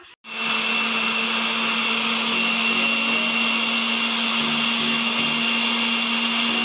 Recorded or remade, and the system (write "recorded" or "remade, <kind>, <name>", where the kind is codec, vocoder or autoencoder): recorded